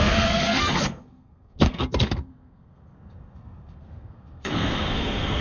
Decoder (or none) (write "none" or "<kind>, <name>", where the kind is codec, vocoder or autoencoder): codec, SNAC